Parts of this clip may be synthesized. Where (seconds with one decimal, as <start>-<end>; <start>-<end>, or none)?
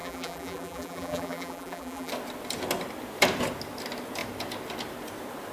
0.0-2.1